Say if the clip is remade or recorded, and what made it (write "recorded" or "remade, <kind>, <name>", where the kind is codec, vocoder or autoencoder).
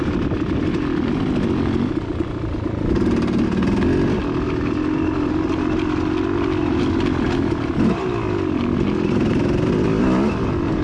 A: recorded